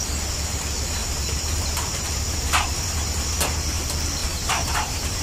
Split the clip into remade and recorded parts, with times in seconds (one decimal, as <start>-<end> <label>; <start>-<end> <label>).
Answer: 0.0-1.0 recorded; 1.0-3.8 remade; 3.8-4.2 recorded; 4.2-5.2 remade